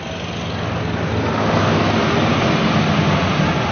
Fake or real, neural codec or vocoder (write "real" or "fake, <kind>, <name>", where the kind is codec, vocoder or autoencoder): real